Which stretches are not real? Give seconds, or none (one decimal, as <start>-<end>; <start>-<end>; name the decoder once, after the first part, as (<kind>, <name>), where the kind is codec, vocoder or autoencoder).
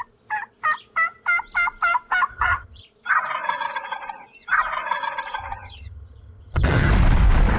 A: 2.3-2.8 (vocoder, HiFi-GAN); 5.4-6.9